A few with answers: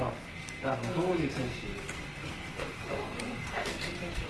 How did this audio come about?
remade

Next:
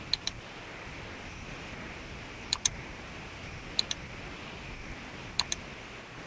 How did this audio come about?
recorded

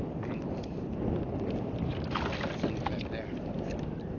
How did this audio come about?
recorded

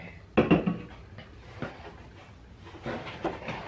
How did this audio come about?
recorded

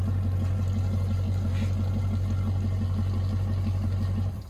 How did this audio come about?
recorded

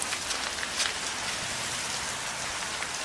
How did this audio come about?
recorded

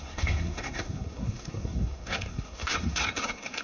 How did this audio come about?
remade